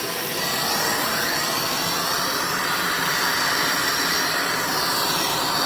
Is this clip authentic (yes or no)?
yes